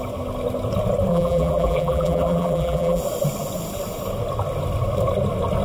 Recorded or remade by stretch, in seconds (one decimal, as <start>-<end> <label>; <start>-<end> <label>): 0.0-1.1 recorded; 1.1-3.0 remade; 3.0-5.6 recorded